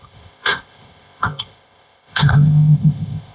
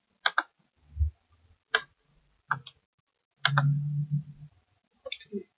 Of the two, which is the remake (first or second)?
first